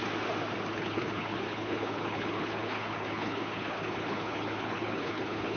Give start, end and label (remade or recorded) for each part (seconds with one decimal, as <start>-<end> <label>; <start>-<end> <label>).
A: 0.0-0.7 recorded; 0.7-5.6 remade